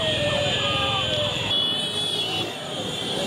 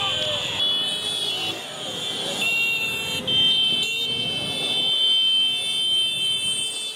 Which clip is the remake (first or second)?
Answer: first